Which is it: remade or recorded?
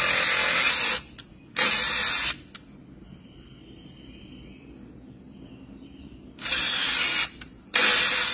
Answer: recorded